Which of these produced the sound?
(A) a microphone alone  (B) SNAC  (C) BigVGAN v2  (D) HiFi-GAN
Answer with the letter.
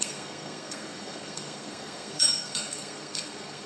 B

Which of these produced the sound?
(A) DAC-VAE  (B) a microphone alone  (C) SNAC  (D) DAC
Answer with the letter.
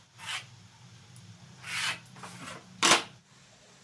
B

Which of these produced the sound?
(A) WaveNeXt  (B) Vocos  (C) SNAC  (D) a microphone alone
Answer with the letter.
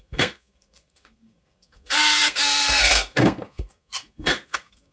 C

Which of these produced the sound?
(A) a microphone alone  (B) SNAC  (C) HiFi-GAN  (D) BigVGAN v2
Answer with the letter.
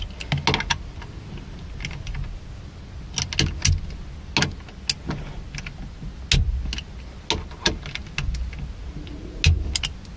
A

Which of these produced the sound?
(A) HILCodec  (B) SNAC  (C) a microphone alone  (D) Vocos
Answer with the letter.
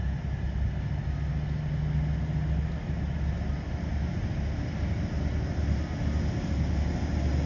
C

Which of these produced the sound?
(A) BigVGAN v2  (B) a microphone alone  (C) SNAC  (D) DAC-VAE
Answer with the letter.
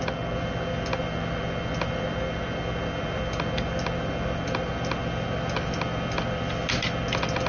B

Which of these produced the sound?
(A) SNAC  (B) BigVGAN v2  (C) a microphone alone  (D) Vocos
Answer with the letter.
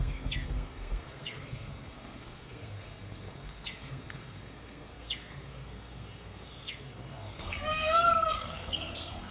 A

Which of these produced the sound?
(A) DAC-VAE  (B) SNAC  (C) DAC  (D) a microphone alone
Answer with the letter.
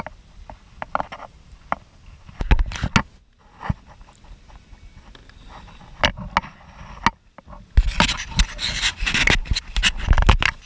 D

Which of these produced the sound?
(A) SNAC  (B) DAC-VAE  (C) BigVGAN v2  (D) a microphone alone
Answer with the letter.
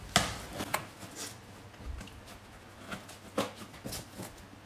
D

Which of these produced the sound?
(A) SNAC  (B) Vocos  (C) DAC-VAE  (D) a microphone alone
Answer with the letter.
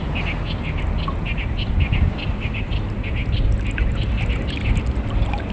D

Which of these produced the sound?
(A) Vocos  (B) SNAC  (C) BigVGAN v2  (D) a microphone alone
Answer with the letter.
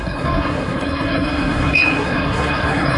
B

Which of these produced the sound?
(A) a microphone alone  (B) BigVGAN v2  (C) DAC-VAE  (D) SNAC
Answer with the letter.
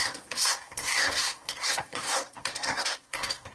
D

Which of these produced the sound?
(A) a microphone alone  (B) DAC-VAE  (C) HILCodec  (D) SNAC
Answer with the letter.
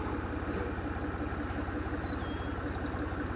A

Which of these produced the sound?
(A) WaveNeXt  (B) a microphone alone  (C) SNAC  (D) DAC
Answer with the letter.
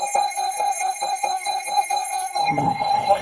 C